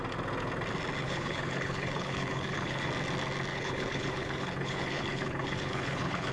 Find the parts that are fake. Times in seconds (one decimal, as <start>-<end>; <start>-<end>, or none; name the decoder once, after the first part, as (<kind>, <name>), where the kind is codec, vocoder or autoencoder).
1.0-2.9 (codec, HILCodec); 3.5-6.3